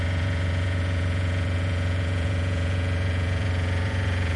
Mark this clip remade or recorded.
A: remade